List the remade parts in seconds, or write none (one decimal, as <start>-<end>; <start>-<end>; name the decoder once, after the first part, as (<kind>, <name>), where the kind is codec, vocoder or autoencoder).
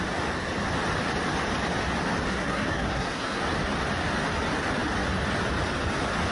2.3-3.4 (codec, SNAC)